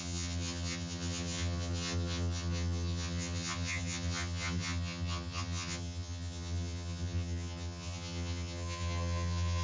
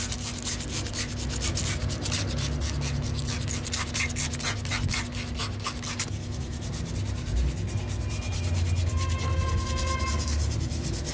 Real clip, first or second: second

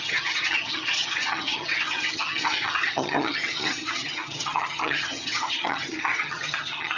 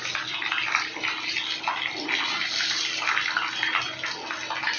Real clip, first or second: second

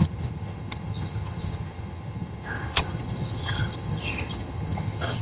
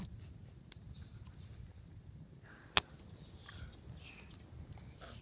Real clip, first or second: second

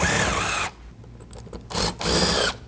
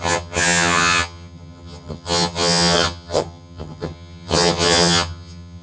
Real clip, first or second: first